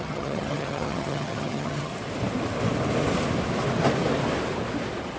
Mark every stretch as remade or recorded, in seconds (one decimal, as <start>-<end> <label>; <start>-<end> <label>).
0.0-1.9 remade; 1.9-5.2 recorded